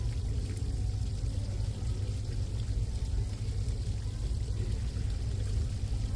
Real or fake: real